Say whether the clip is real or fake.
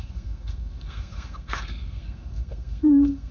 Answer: fake